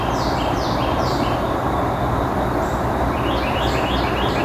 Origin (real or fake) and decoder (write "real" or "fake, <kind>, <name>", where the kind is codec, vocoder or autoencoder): real